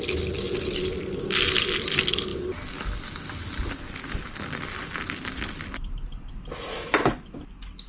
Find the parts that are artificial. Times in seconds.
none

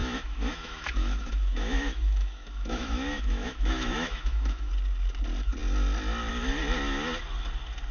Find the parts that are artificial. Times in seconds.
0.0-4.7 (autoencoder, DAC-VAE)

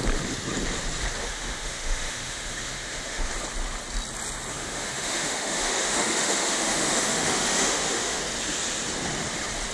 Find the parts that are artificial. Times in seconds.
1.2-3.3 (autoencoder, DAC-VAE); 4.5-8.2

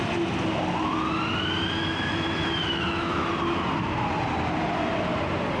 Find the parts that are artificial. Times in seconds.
1.8-3.3 (autoencoder, DAC-VAE)

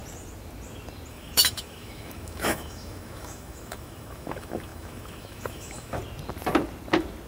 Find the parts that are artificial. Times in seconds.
1.1-6.0 (autoencoder, DAC-VAE)

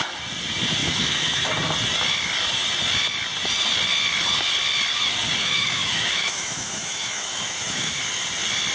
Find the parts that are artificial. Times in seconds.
0.8-1.5 (autoencoder, DAC-VAE); 5.4-8.0